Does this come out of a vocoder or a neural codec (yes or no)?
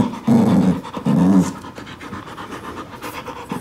no